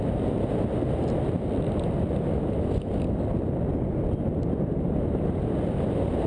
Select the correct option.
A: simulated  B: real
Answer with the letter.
B